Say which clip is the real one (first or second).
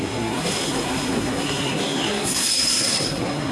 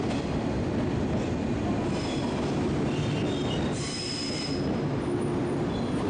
second